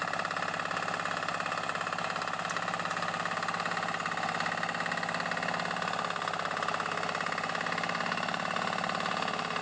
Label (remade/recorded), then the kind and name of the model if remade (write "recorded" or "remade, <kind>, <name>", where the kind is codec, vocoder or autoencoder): recorded